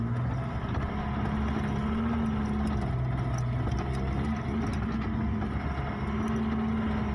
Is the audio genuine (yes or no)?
yes